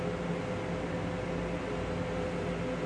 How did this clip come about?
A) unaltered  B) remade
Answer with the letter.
A